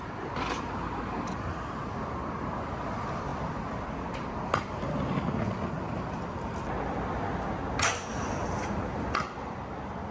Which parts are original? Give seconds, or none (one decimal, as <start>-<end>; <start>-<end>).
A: 0.0-10.1